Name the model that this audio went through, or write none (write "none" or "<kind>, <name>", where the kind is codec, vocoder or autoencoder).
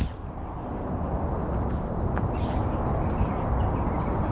none